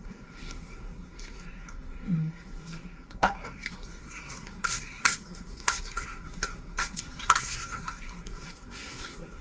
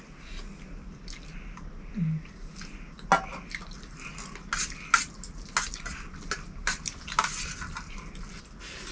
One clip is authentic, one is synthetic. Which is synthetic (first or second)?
first